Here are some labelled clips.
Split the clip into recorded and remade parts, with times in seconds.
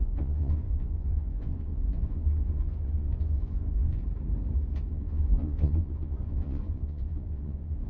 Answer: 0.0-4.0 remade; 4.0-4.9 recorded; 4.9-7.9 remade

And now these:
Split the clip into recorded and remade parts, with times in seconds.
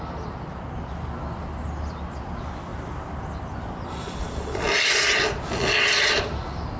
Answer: 0.0-6.8 recorded